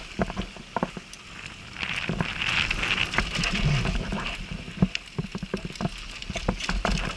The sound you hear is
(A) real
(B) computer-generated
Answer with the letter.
A